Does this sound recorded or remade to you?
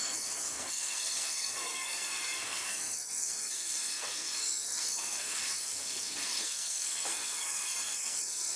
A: remade